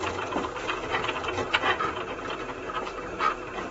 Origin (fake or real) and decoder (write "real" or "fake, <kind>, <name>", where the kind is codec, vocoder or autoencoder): real